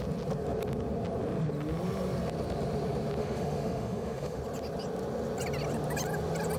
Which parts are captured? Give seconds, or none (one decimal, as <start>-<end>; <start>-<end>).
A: 0.0-3.2; 4.4-6.6

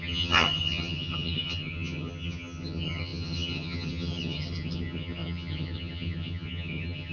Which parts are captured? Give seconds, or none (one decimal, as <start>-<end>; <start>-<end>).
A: none